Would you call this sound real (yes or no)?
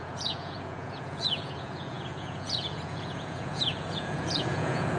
no